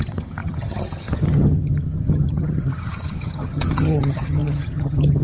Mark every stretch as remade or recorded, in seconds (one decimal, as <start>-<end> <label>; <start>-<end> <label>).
0.0-5.2 remade